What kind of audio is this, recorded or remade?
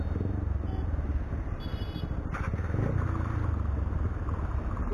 recorded